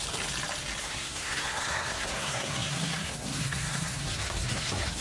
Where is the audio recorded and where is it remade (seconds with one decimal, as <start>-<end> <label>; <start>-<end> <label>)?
0.0-0.8 recorded; 0.8-5.0 remade